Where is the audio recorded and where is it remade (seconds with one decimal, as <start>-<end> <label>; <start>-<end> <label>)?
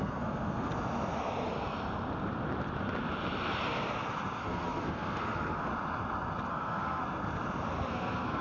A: 0.0-0.7 remade; 0.7-4.4 recorded; 4.4-5.7 remade; 5.7-6.5 recorded; 6.5-7.0 remade; 7.0-7.9 recorded; 7.9-8.4 remade